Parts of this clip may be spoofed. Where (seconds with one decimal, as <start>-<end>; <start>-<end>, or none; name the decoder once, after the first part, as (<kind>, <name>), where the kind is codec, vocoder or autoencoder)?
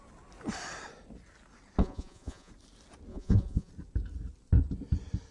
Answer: 1.8-2.5 (vocoder, Vocos); 3.1-3.7